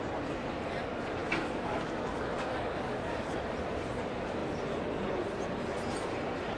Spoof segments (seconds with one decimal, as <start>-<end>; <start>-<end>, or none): 1.2-3.3